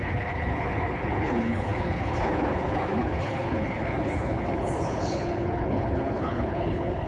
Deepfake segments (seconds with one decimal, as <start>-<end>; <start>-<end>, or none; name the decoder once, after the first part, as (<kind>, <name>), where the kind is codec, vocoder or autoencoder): 0.0-7.1 (codec, HILCodec)